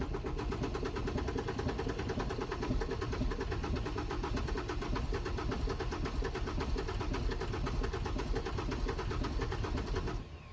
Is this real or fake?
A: real